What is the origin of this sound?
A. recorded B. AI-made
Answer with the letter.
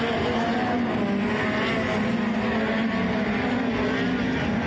A